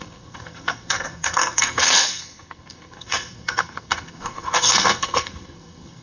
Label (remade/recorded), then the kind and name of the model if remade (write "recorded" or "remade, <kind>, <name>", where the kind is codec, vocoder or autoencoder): remade, codec, SNAC